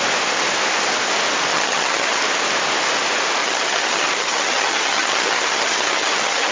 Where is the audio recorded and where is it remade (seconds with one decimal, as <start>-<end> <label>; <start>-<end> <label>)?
0.0-1.5 recorded; 1.5-2.2 remade; 2.2-3.4 recorded; 3.4-6.5 remade